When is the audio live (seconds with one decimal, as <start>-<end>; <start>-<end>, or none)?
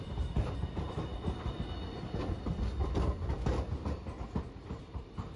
1.1-4.3